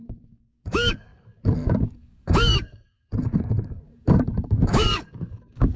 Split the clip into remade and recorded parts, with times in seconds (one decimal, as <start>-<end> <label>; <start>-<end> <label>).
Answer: 0.0-5.8 remade